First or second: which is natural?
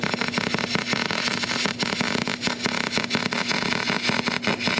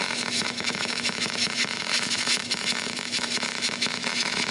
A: first